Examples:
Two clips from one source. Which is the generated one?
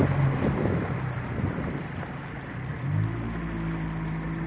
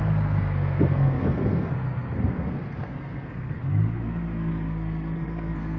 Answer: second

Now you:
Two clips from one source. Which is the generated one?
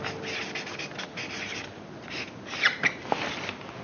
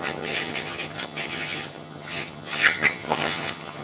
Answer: second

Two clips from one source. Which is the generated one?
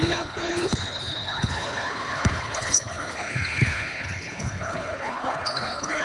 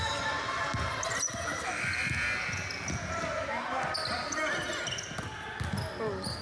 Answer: first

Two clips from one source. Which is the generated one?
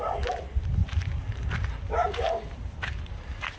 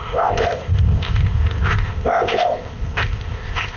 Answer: second